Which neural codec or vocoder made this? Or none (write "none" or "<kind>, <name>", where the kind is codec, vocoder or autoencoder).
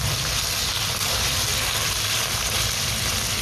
none